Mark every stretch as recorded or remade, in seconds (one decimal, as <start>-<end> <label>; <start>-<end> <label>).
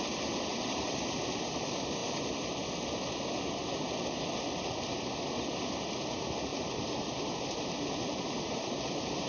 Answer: 0.0-0.5 recorded; 0.5-1.4 remade; 1.4-6.5 recorded; 6.5-9.3 remade